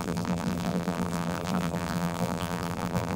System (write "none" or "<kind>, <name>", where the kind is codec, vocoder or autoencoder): vocoder, BigVGAN v2